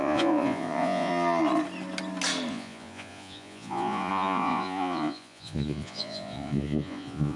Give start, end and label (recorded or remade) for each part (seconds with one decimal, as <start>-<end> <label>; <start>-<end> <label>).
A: 0.0-1.1 remade; 1.1-2.5 recorded; 2.5-7.4 remade